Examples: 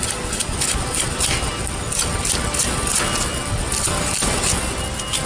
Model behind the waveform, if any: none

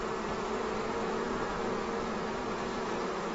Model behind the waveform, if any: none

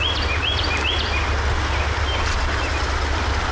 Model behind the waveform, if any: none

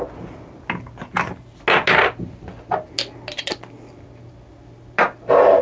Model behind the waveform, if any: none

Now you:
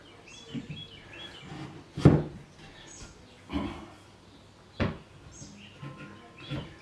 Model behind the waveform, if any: none